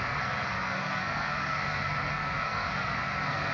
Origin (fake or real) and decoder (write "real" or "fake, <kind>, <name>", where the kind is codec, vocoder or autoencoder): fake, codec, SNAC